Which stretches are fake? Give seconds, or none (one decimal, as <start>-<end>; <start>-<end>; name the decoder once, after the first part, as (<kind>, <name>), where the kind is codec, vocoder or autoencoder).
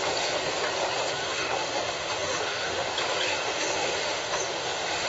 1.2-2.9 (autoencoder, DAC-VAE); 3.3-5.1